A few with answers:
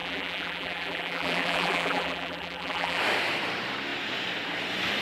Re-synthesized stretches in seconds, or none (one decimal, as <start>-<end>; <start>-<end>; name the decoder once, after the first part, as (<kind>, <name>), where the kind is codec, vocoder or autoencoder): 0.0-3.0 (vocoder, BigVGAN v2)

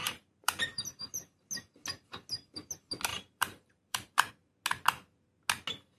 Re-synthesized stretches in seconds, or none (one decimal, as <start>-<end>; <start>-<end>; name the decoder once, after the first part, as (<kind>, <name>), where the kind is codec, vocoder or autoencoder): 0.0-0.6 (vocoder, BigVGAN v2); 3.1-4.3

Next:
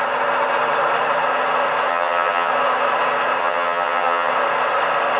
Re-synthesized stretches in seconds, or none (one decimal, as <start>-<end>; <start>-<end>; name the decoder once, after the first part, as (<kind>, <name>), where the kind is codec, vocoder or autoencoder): 1.9-2.5 (vocoder, HiFi-GAN); 3.4-4.3

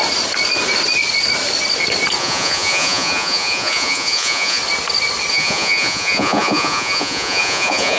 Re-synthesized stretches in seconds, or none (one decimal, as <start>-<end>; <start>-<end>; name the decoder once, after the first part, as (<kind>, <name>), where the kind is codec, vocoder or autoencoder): 2.2-4.6 (vocoder, Vocos); 5.3-8.0

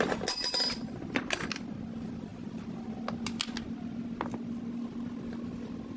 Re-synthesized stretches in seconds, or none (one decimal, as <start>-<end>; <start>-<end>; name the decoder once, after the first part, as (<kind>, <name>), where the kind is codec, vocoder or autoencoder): none

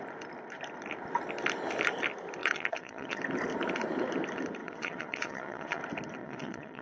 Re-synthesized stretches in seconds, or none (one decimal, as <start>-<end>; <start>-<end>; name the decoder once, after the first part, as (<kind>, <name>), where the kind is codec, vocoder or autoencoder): 2.4-3.2 (vocoder, WaveNeXt); 4.6-5.8; 6.2-6.8

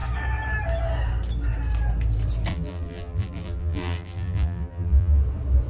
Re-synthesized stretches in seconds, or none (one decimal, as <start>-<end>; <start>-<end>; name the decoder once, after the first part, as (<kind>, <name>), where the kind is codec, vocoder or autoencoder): 2.5-5.2 (vocoder, BigVGAN v2)

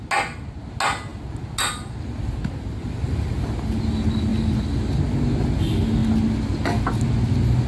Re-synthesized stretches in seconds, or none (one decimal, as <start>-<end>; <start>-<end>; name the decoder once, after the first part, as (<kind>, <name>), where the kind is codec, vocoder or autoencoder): none